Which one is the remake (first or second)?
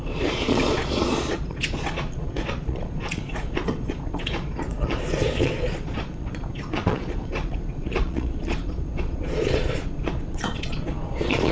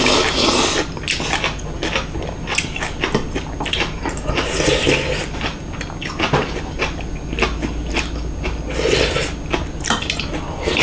first